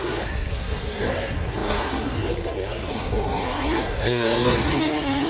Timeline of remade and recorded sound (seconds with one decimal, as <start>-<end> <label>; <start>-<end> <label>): 0.0-5.3 remade